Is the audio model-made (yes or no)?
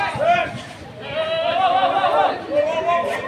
no